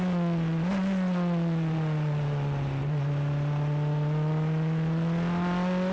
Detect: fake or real real